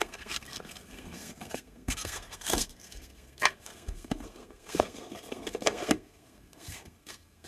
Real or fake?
fake